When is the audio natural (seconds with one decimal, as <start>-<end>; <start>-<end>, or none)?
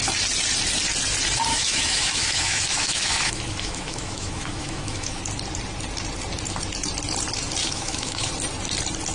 0.0-1.5; 5.2-7.6; 8.3-9.1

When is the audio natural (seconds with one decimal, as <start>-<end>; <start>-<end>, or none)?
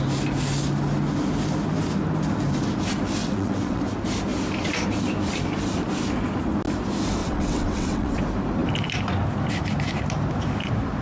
0.0-3.2; 3.8-7.2; 8.2-11.0